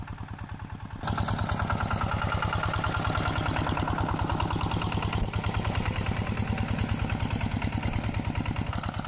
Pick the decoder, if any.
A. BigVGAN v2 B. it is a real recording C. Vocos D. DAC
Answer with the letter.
B